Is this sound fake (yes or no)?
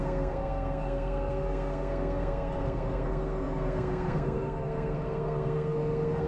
yes